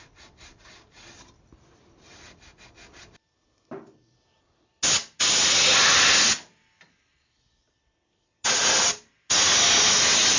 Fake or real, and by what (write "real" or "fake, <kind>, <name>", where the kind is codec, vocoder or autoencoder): real